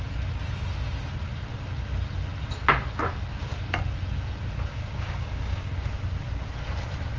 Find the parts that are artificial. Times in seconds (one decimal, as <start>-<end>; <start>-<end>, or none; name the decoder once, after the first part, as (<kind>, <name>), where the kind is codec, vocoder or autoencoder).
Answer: 4.7-5.7 (codec, DAC)